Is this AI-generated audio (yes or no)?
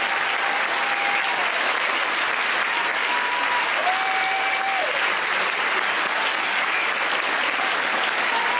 no